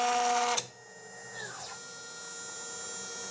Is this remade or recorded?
recorded